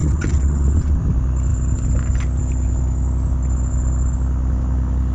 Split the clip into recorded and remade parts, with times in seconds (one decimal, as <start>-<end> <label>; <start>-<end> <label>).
0.0-1.0 remade; 1.0-5.1 recorded